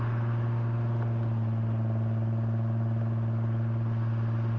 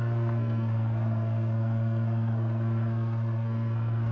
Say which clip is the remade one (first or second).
second